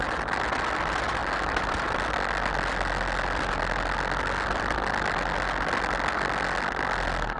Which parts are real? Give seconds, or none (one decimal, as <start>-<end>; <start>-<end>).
0.0-7.4